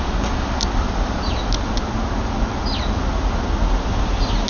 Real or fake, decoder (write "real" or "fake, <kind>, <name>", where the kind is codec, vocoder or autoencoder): real